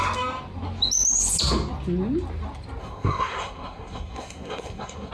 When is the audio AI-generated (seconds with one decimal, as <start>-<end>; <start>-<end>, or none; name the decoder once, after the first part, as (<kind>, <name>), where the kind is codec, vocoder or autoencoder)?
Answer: 2.8-5.1 (codec, SNAC)